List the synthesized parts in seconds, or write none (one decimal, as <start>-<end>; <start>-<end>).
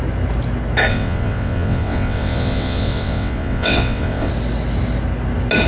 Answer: 0.9-4.3